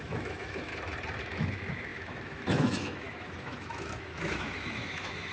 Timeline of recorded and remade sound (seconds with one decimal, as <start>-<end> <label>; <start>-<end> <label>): 0.0-0.7 remade; 0.7-1.2 recorded; 1.2-5.3 remade